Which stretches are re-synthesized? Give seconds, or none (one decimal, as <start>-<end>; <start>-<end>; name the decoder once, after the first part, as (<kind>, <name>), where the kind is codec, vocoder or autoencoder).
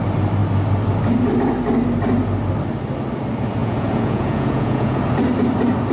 3.6-5.0 (vocoder, Vocos)